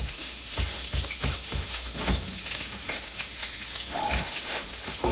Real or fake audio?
fake